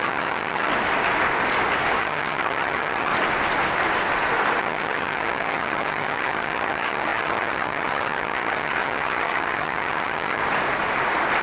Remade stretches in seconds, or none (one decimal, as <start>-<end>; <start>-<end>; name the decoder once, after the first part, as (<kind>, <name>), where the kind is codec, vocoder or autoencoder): 0.0-0.7 (vocoder, HiFi-GAN); 2.0-3.1; 4.6-10.4